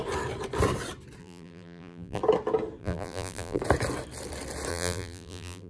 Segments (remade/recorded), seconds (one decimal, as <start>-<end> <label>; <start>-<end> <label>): 0.0-1.2 recorded; 1.2-2.2 remade; 2.2-2.8 recorded; 2.8-3.6 remade; 3.6-4.7 recorded; 4.7-5.7 remade